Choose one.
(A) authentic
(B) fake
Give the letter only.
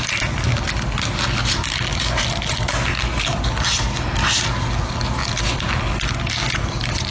A